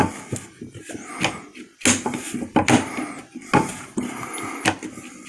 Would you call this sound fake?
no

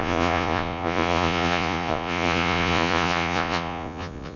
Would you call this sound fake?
yes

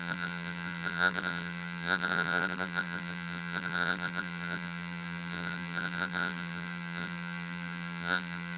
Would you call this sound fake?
yes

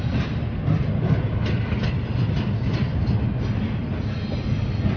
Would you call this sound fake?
no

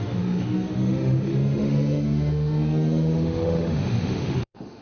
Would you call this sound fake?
yes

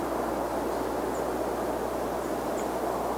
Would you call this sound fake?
no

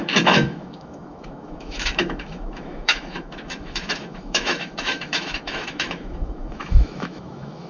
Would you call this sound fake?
yes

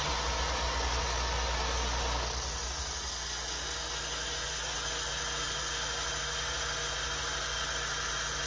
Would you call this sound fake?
no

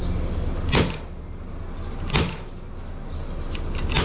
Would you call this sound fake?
no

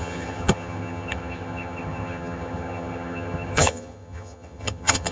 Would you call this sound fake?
yes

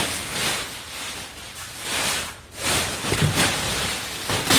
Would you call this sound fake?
yes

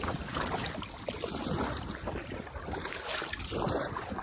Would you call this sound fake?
no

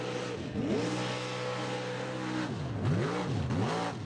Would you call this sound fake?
no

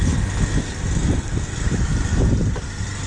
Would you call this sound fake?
no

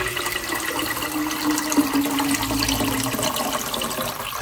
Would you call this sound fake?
no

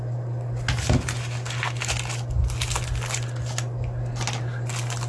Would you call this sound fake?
no